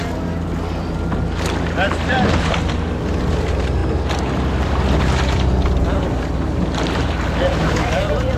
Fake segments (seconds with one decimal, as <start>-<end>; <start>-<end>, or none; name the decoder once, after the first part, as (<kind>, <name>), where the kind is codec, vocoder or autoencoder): none